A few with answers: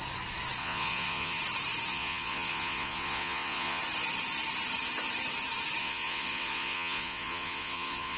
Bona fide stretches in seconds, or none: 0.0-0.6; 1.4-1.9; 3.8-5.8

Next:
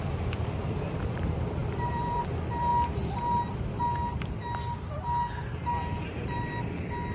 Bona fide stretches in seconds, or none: 2.7-7.1